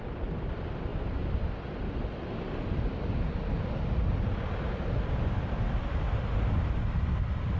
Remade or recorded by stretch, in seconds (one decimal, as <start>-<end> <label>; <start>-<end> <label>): 0.0-7.6 recorded